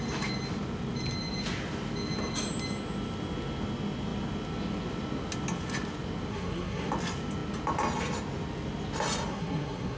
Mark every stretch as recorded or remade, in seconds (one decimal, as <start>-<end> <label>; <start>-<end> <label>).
0.0-6.3 recorded; 6.3-6.9 remade; 6.9-9.3 recorded; 9.3-10.0 remade